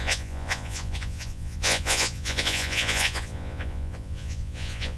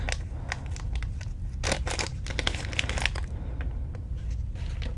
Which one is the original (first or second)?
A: second